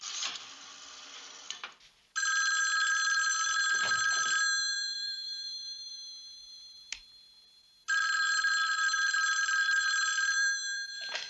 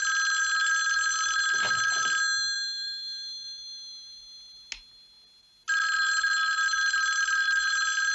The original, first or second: second